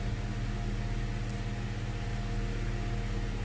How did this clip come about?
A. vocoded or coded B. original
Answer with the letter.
B